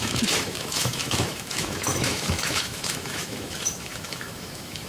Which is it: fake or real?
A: fake